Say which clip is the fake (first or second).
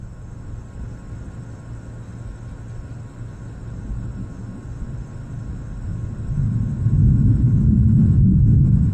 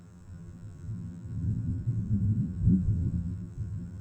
second